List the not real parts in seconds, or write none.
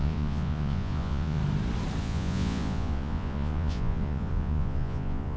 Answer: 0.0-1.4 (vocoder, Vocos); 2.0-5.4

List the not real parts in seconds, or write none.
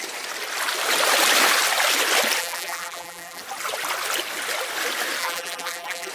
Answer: 2.4-3.4 (vocoder, BigVGAN v2); 5.2-6.1